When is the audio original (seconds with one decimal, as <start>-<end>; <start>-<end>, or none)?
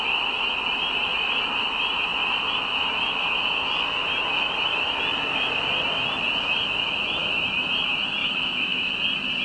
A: 0.0-8.2; 8.9-9.4